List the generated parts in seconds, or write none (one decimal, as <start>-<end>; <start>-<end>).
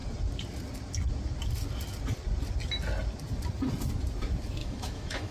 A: 4.6-5.3